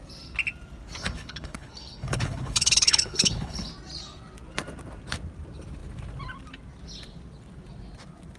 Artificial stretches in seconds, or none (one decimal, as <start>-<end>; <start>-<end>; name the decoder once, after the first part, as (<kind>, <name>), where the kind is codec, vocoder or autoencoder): 1.0-3.7 (codec, HILCodec)